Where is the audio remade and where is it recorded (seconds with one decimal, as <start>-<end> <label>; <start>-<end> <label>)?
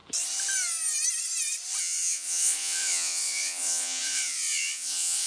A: 0.0-1.8 recorded; 1.8-5.3 remade